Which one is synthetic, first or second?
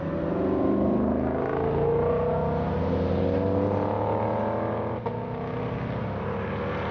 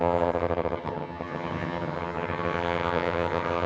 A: second